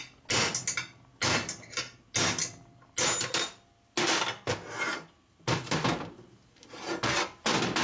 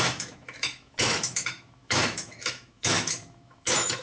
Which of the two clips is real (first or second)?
first